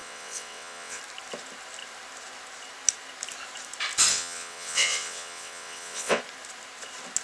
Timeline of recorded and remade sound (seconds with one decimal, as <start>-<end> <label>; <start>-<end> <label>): 0.0-1.0 remade; 1.0-4.1 recorded; 4.1-6.2 remade; 6.2-7.2 recorded